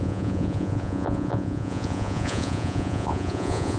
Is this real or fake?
fake